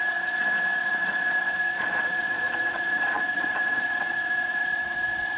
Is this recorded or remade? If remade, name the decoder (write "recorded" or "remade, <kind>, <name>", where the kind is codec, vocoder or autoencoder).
remade, vocoder, Vocos